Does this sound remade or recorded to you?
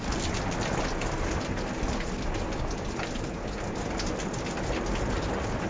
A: recorded